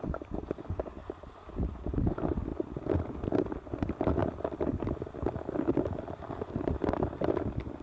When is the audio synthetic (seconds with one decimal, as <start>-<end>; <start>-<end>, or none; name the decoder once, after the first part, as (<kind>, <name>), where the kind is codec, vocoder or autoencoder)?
none